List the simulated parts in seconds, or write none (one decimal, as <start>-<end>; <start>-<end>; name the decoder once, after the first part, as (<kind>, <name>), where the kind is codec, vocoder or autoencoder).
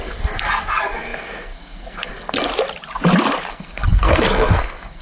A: 0.0-2.5 (codec, SNAC); 3.5-5.0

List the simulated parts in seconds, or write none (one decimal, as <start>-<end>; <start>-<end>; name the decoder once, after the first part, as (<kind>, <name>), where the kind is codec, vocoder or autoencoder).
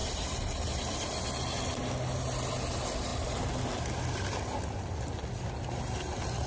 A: none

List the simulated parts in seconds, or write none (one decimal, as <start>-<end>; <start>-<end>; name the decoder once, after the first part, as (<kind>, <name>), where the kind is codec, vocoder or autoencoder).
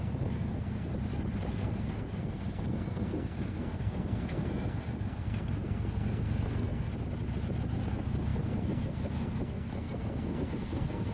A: 0.0-0.9 (codec, SNAC); 1.5-6.9; 7.9-11.1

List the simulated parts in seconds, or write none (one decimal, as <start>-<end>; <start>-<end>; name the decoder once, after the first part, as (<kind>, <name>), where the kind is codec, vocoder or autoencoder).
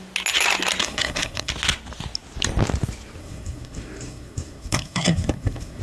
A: 0.8-1.5 (codec, SNAC); 3.2-5.8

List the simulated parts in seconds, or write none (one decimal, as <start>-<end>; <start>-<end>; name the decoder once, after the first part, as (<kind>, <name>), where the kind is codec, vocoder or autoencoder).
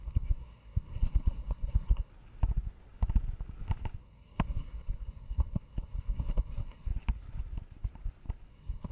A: 0.0-2.1 (codec, SNAC); 4.0-6.9; 8.5-8.9